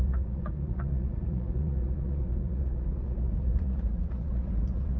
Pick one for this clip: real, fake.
fake